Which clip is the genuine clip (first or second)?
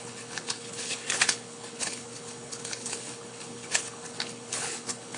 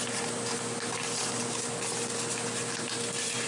second